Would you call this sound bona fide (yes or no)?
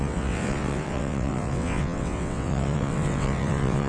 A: no